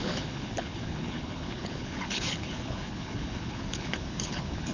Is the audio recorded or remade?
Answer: remade